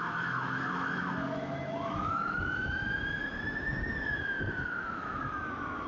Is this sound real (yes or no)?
no